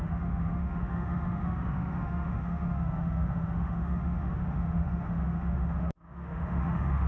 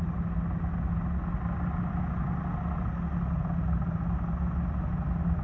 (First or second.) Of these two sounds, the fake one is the first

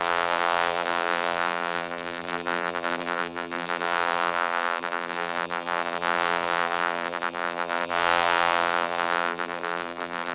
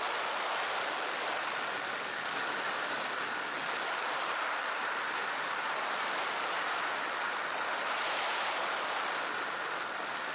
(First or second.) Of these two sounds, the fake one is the first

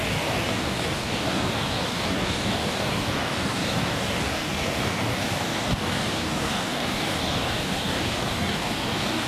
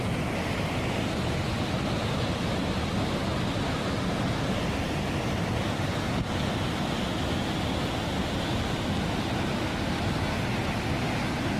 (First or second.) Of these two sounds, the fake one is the first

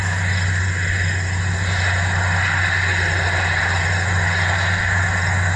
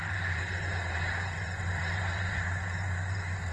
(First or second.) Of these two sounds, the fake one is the second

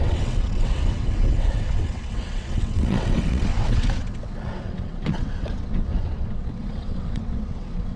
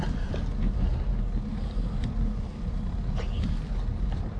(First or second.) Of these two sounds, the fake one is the first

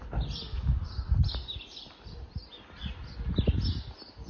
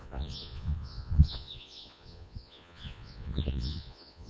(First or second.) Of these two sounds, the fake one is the second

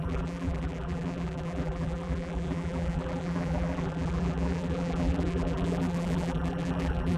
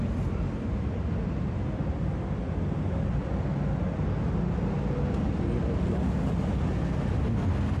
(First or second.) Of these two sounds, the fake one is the first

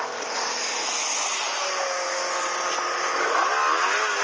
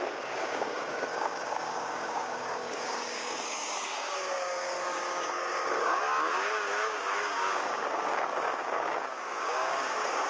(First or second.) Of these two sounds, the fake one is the second